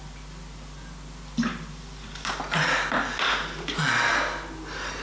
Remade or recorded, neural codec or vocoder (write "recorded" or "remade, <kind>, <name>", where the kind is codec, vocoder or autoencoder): recorded